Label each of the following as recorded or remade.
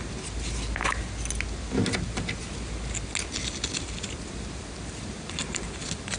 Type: recorded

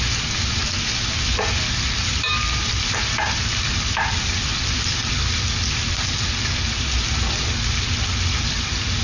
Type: recorded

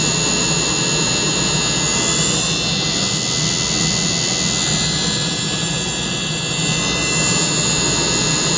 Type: recorded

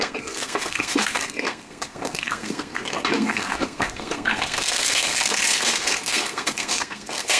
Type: remade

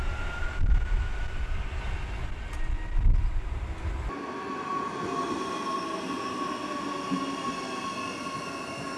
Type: recorded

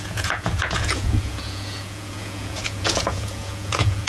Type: remade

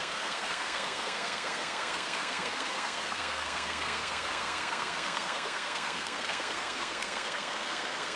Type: remade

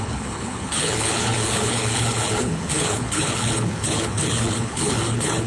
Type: remade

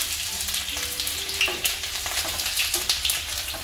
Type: remade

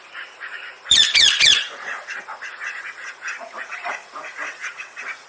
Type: remade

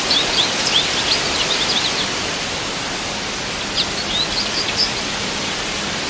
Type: recorded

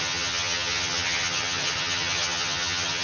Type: remade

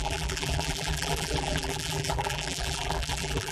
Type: remade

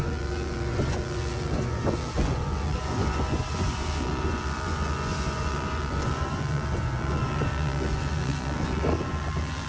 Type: remade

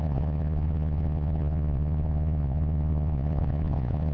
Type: remade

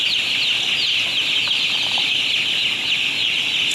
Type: recorded